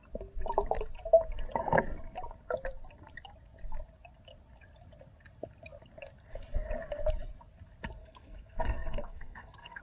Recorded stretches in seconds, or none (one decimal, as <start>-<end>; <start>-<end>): 0.0-8.0